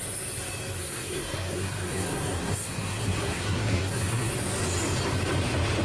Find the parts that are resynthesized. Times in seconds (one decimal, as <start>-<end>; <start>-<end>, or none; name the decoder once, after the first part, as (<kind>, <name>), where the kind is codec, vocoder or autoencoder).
0.8-4.3 (codec, SNAC)